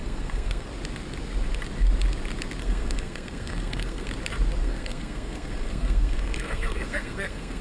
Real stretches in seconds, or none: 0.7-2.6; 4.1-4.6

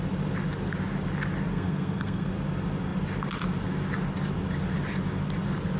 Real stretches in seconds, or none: 0.0-1.5; 2.3-5.8

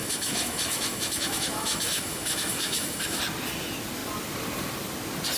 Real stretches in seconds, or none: 3.2-5.4

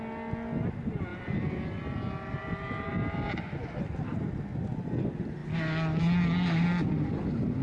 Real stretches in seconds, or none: 0.0-1.1; 1.8-2.9; 3.6-7.6

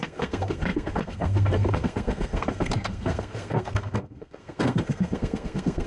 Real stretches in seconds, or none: none